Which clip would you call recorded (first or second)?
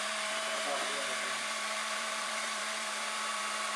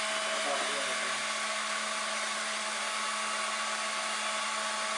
second